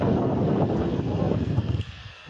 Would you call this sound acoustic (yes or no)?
no